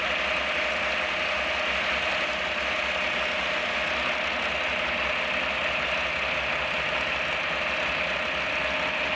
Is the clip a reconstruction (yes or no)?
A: no